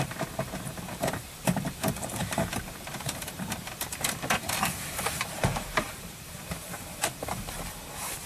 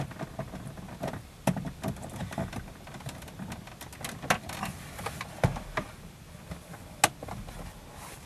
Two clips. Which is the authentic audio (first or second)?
second